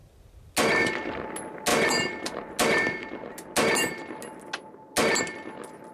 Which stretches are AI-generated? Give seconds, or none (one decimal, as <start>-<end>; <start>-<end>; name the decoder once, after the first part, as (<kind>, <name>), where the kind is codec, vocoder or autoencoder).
none